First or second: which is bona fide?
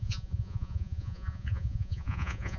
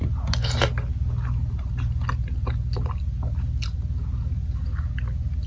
second